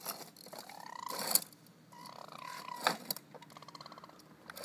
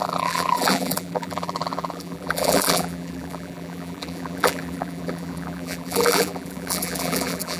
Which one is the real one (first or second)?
first